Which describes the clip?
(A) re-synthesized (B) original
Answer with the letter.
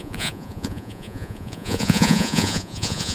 A